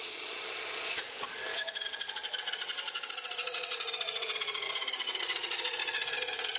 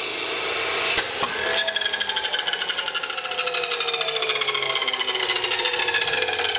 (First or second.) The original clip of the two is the second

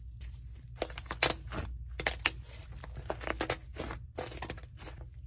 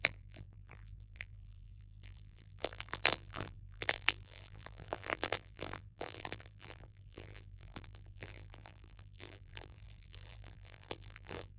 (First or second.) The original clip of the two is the first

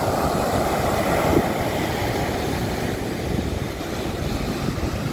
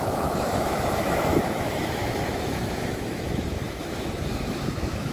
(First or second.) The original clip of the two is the first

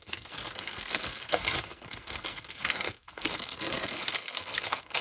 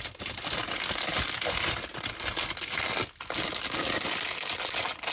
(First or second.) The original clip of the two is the second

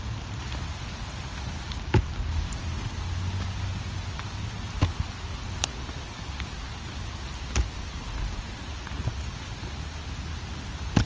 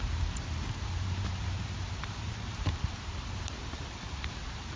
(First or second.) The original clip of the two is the first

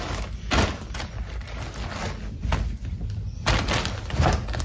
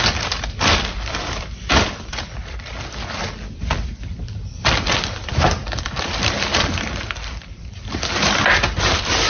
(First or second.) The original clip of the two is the first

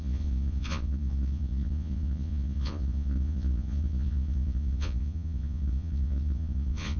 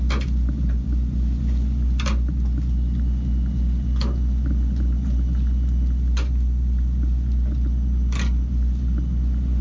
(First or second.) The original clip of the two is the second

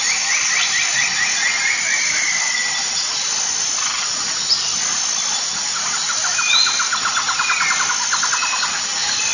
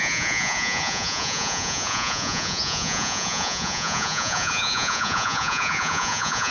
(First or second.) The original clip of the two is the first